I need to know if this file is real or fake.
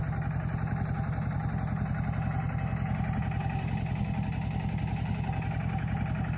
real